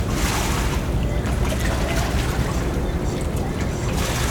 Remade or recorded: recorded